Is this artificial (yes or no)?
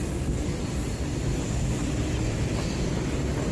no